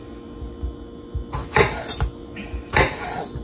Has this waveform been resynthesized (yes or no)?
no